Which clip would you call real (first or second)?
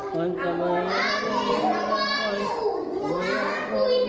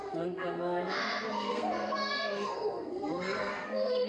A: first